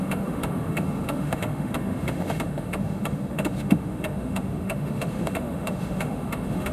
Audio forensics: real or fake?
fake